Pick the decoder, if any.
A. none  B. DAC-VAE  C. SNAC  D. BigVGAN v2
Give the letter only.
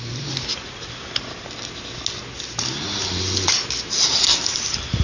A